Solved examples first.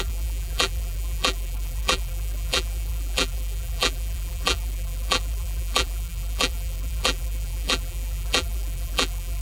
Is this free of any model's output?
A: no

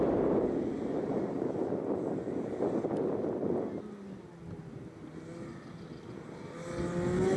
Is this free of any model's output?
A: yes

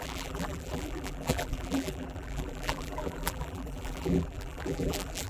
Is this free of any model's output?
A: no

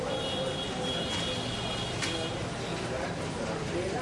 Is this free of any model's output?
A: yes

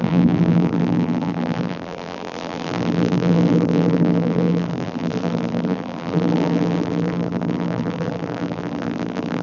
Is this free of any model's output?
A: no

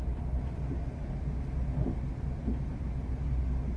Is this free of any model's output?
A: yes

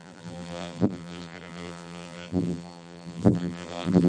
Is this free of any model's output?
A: no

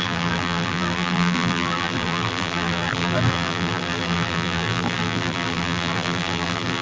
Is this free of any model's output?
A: no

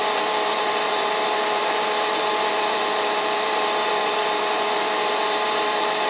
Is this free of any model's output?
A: no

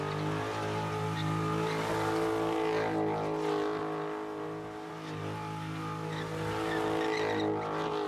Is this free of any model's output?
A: yes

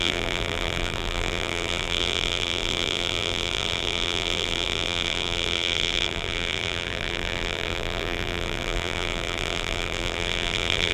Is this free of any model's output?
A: no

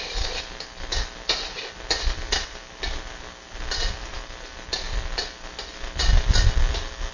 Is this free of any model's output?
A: yes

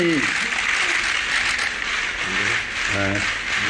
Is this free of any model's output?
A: yes